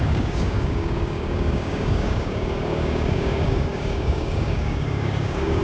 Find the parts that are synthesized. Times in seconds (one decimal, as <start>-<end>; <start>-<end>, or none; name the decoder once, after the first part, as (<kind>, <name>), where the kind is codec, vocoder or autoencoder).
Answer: 0.0-5.6 (codec, DAC)